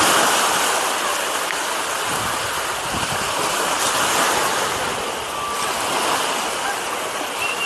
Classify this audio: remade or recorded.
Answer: recorded